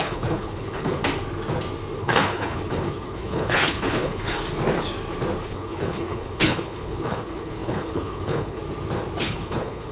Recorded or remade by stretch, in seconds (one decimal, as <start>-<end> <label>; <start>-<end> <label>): 0.0-1.0 remade; 1.0-2.0 recorded; 2.0-4.4 remade; 4.4-5.4 recorded; 5.4-8.6 remade; 8.6-9.2 recorded; 9.2-9.9 remade